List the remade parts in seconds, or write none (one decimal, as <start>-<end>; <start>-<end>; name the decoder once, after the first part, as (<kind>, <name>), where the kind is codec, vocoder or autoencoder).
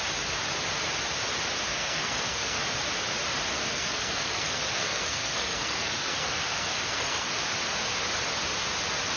1.7-2.6 (codec, SNAC); 3.5-7.4